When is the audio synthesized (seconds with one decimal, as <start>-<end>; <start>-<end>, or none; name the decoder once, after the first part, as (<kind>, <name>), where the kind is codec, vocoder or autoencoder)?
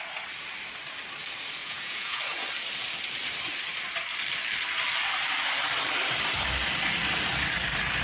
1.6-2.2 (vocoder, Vocos)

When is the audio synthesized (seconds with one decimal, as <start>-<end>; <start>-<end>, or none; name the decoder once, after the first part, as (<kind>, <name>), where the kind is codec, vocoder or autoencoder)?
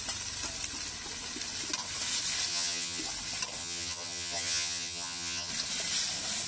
2.5-3.0 (vocoder, HiFi-GAN); 3.6-5.5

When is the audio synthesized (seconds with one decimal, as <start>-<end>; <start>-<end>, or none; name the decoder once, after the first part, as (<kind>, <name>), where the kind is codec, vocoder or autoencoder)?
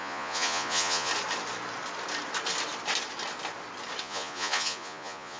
0.0-1.1 (vocoder, Vocos); 4.0-5.4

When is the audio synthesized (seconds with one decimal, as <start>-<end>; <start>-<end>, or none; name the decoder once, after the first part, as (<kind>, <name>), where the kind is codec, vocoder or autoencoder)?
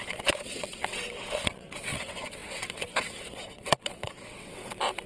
0.0-5.1 (vocoder, WaveNeXt)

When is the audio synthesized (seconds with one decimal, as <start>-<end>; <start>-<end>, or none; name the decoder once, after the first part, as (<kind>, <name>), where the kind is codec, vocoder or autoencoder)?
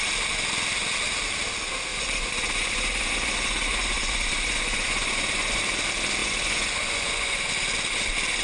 1.9-5.6 (vocoder, Vocos); 6.2-7.5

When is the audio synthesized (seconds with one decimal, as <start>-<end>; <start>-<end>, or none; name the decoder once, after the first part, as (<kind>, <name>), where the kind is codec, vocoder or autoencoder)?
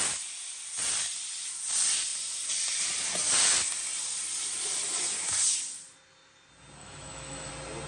6.8-7.5 (autoencoder, DAC-VAE)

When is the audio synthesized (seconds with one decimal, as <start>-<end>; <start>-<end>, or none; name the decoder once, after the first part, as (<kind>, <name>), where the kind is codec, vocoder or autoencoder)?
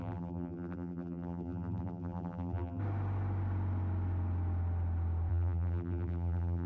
0.0-2.8 (vocoder, BigVGAN v2); 5.3-6.7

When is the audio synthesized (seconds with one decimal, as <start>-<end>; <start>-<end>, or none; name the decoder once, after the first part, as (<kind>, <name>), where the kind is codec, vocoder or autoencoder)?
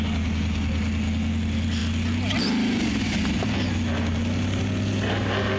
none